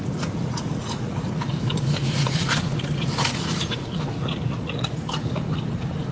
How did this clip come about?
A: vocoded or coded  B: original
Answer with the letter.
A